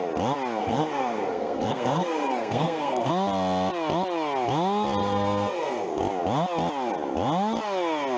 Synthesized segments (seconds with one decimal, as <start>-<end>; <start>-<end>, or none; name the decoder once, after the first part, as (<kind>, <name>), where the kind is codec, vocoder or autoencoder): 0.6-3.1 (codec, SNAC); 5.0-6.0